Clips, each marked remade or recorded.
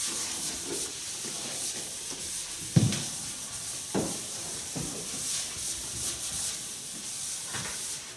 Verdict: remade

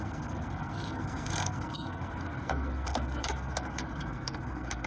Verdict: remade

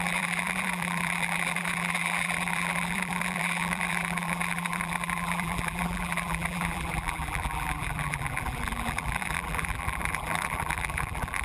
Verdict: remade